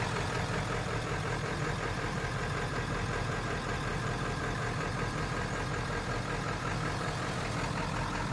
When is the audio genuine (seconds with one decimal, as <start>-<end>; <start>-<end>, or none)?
0.0-8.3